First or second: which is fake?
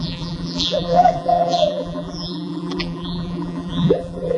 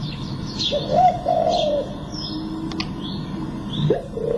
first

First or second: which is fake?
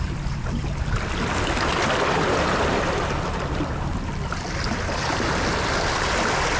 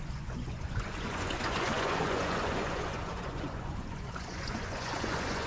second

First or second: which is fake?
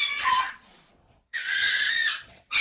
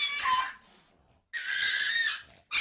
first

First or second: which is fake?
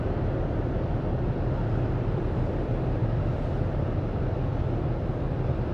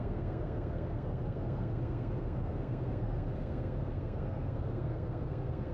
second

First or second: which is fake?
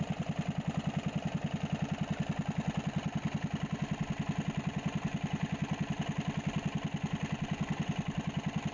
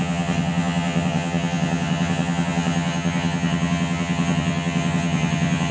second